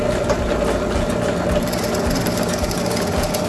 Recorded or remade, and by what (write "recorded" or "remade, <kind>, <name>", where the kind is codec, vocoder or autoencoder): recorded